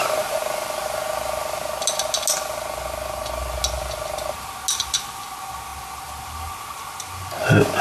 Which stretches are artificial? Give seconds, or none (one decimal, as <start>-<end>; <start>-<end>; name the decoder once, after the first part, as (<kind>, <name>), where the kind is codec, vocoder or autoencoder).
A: none